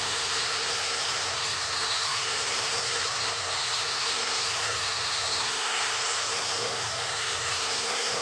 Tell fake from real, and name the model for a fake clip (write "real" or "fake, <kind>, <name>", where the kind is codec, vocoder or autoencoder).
fake, codec, SNAC